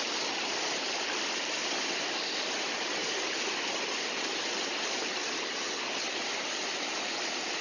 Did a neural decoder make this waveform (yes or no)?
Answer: no